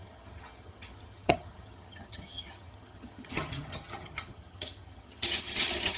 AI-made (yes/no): yes